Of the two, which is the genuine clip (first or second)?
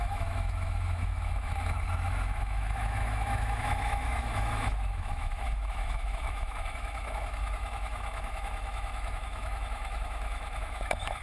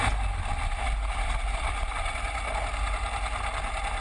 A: second